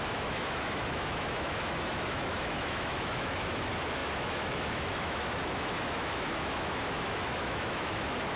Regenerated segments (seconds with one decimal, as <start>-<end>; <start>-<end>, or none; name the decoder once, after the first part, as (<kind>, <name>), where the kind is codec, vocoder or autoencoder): 0.0-8.4 (autoencoder, DAC-VAE)